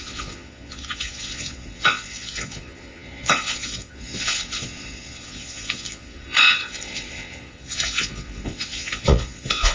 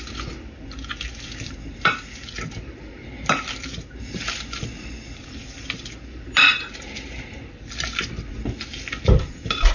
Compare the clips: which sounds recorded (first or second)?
second